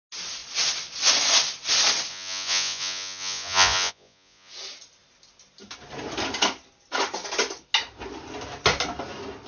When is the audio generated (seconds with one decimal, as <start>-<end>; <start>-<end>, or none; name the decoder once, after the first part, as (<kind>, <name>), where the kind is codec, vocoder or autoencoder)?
2.1-4.5 (vocoder, Vocos)